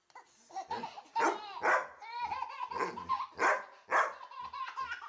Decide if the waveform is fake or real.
real